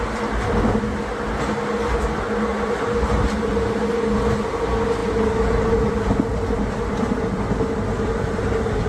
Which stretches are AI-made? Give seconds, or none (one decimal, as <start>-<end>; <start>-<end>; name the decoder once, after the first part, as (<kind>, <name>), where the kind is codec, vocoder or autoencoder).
2.5-3.8 (vocoder, BigVGAN v2); 5.0-5.9